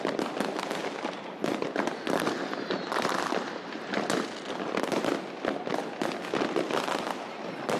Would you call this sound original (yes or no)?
yes